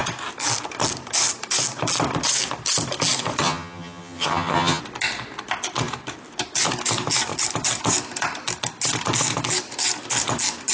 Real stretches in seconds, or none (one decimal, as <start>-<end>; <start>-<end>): 0.0-3.4; 4.8-10.7